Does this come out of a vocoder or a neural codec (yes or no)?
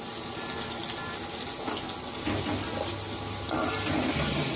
no